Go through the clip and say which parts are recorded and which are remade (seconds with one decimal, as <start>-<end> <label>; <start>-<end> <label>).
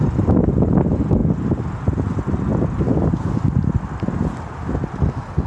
0.0-5.5 recorded